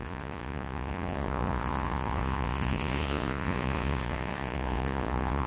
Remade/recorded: remade